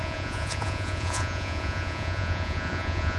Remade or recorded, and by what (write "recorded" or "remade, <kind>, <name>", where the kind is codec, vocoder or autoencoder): remade, vocoder, Vocos